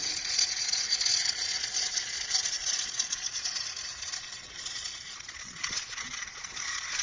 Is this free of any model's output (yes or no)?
no